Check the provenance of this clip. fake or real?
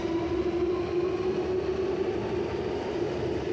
real